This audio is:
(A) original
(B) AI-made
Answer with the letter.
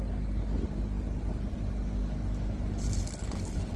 A